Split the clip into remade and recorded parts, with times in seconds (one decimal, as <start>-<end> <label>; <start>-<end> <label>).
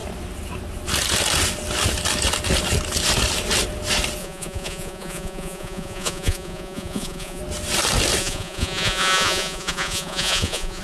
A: 0.0-4.2 recorded; 4.2-7.4 remade; 7.4-8.2 recorded; 8.2-10.8 remade